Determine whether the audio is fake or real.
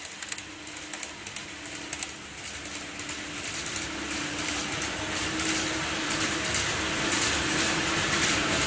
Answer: real